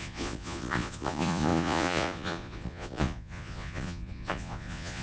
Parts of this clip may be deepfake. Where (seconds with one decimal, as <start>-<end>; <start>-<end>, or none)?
0.0-5.0